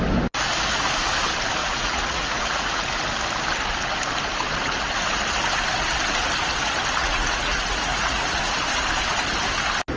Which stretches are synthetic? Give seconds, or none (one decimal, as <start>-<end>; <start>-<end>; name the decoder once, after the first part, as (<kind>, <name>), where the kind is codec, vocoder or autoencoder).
1.6-2.9 (vocoder, Vocos); 7.0-8.5